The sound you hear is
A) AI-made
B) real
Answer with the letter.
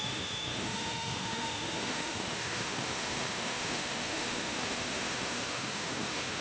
A